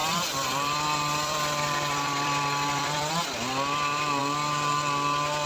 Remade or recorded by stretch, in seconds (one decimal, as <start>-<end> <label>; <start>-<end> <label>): 0.0-3.1 remade; 3.1-5.5 recorded